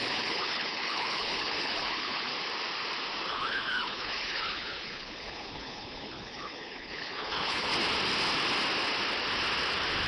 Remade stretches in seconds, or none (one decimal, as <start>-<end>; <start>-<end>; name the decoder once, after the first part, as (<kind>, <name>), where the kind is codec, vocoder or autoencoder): 0.0-2.3 (codec, HILCodec); 3.3-7.7